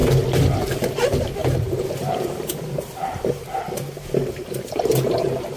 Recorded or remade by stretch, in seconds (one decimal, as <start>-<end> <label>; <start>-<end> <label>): 0.0-0.6 recorded; 0.6-5.6 remade